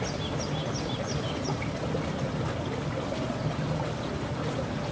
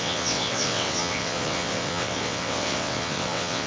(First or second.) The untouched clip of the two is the first